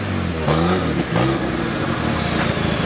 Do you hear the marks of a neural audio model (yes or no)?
no